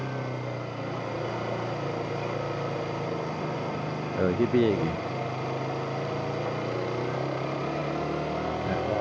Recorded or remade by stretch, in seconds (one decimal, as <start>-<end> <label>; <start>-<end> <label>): 0.0-9.0 recorded